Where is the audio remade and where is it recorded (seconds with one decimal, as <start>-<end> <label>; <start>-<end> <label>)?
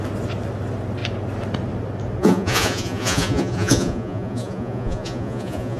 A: 0.0-2.2 recorded; 2.2-5.8 remade